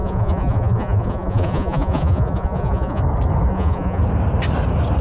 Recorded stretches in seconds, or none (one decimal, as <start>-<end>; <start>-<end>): 3.0-3.5; 4.0-5.0